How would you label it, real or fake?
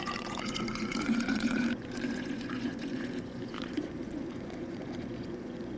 fake